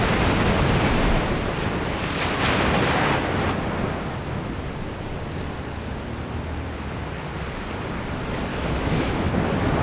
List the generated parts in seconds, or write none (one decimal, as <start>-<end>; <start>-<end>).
8.5-9.3